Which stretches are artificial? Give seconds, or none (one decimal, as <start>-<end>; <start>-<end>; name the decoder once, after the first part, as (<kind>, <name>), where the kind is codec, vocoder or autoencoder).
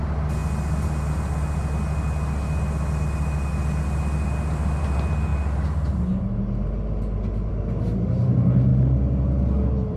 none